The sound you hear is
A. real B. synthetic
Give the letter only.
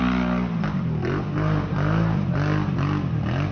A